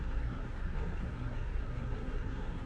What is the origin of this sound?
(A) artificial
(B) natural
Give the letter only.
A